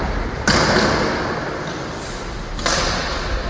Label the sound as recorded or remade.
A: recorded